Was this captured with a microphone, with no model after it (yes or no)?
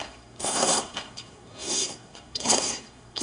no